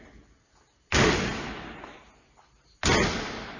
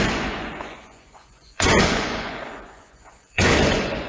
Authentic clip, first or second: first